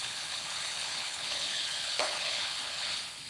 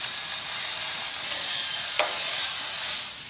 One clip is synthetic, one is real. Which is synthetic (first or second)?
first